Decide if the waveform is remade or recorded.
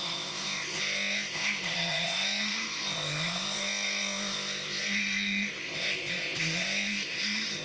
remade